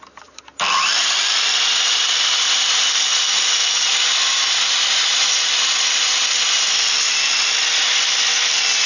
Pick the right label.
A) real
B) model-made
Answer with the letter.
A